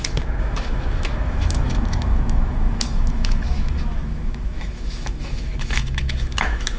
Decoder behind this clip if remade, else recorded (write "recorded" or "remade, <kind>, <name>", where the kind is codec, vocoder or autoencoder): remade, autoencoder, DAC-VAE